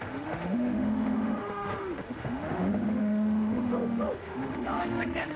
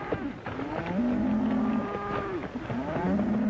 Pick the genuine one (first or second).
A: second